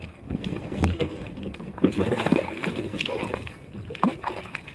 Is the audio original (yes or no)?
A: no